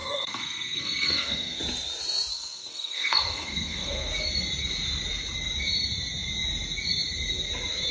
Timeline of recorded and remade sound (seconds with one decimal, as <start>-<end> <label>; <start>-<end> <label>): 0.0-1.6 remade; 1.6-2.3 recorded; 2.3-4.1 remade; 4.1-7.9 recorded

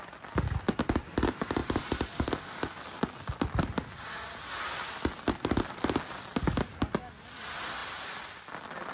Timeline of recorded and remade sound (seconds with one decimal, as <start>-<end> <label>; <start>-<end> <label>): 0.0-8.9 recorded

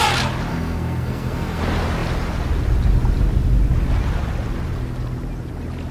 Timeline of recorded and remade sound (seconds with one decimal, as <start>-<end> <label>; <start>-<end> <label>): 0.0-0.5 recorded; 0.5-1.6 remade; 1.6-5.9 recorded

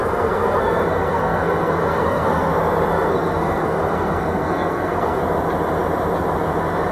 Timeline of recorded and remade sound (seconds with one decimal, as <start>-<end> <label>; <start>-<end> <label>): 0.0-2.5 remade; 2.5-2.9 recorded; 2.9-5.2 remade; 5.2-6.9 recorded

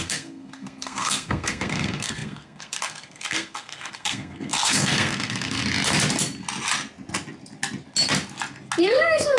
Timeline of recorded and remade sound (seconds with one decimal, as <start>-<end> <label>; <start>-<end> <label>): 0.0-5.6 remade; 5.6-8.8 recorded; 8.8-9.4 remade

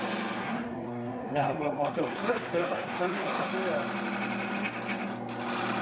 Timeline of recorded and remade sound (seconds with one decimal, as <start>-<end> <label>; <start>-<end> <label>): 0.0-0.4 recorded; 0.4-3.5 remade; 3.5-5.8 recorded

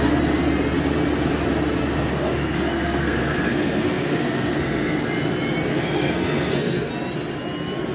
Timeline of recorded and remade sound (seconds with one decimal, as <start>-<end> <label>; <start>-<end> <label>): 0.0-2.1 recorded; 2.1-5.0 remade; 5.0-5.7 recorded; 5.7-6.9 remade; 6.9-7.9 recorded